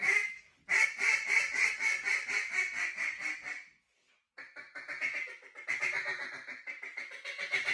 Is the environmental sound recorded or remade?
recorded